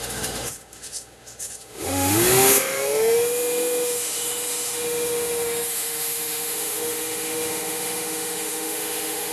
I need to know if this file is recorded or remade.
remade